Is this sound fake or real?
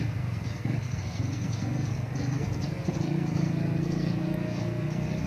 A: fake